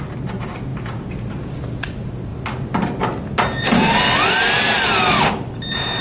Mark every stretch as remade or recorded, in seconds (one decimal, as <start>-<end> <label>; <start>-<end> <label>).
0.0-6.0 recorded

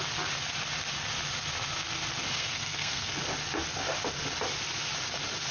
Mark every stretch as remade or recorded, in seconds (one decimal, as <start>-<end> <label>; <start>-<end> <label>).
0.0-2.3 recorded; 2.3-3.2 remade; 3.2-5.5 recorded

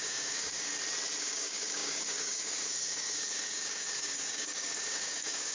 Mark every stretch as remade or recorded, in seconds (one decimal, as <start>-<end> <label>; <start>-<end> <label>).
0.0-0.7 remade; 0.7-1.2 recorded; 1.2-5.5 remade

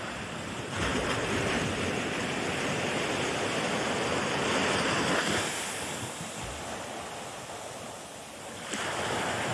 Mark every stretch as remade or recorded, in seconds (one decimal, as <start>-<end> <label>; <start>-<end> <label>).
0.0-0.9 recorded; 0.9-1.9 remade; 1.9-9.5 recorded

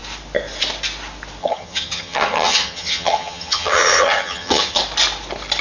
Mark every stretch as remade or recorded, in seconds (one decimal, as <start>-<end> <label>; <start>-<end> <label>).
0.0-1.4 recorded; 1.4-4.8 remade; 4.8-5.6 recorded